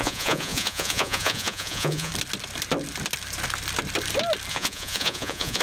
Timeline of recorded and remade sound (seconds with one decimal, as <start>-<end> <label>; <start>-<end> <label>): 0.0-2.1 remade; 2.1-4.5 recorded; 4.5-5.6 remade